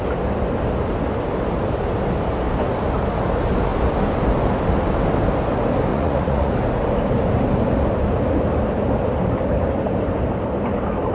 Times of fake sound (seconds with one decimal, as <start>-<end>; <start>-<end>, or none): 5.9-6.5